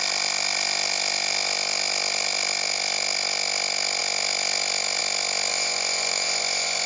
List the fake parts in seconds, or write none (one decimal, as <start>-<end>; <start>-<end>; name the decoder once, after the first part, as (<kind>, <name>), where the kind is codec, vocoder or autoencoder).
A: 5.5-6.9 (vocoder, Vocos)

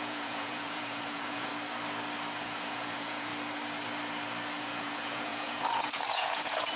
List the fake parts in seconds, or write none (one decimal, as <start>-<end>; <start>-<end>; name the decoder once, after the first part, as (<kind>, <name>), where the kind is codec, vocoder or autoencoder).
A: 0.0-1.5 (vocoder, Vocos); 2.4-3.3; 4.6-6.8